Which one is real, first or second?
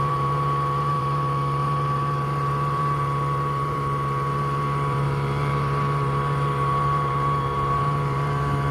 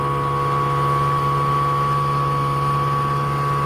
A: second